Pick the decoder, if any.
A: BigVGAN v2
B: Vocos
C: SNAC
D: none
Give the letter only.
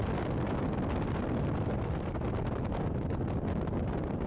D